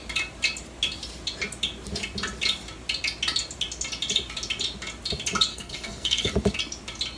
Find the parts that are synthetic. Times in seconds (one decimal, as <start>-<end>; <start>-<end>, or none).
5.5-6.3